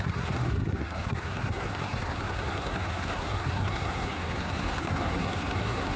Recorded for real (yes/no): no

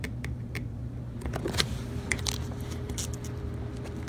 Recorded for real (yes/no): no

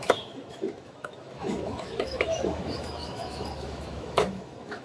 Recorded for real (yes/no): no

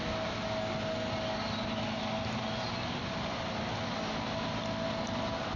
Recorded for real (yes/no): yes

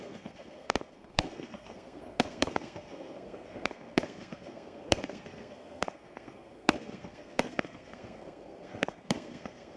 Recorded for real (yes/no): no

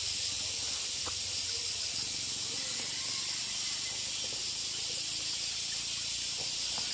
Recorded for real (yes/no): yes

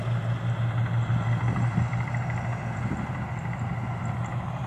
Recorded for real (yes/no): yes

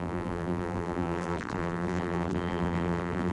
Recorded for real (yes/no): no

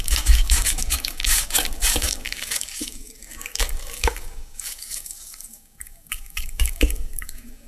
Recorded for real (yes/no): no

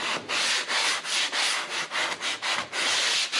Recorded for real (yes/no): yes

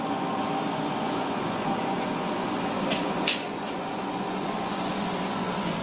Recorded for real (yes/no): no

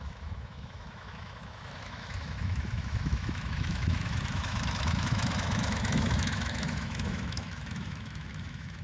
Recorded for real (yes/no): no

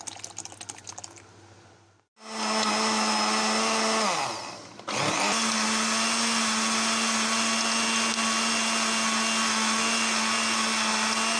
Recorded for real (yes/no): yes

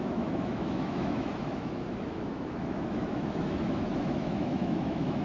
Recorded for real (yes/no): no